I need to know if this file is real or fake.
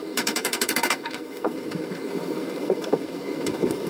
fake